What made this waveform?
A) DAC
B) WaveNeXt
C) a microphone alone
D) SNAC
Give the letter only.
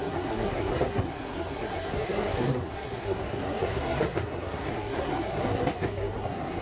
D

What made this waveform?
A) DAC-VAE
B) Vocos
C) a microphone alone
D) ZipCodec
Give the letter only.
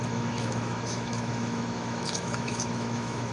A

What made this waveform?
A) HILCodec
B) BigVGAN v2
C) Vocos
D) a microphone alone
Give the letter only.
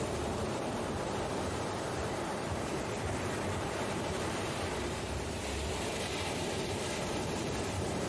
B